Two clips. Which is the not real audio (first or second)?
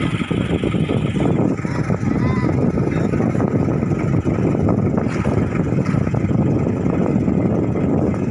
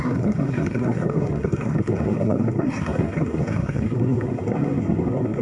second